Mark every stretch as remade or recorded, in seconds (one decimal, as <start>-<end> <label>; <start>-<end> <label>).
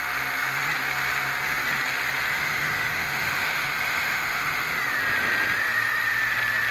0.0-2.3 recorded; 2.3-4.8 remade; 4.8-6.7 recorded